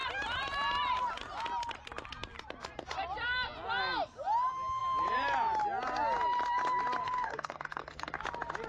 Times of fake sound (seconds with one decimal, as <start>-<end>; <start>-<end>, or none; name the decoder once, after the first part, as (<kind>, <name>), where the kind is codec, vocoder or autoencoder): 7.0-8.1 (codec, SNAC)